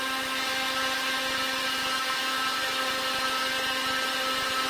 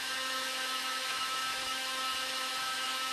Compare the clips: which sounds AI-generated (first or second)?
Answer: second